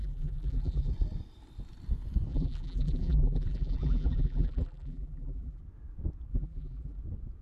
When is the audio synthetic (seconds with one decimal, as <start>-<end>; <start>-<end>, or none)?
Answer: 0.0-0.9; 2.3-5.6; 6.3-7.0